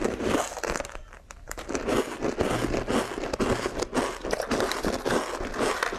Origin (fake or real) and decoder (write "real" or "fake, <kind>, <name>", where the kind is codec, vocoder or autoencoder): real